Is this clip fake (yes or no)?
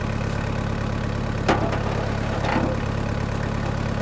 no